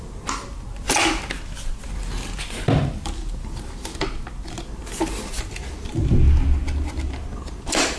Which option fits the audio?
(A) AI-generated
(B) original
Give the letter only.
B